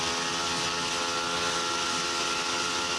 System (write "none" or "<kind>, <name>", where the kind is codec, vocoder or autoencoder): none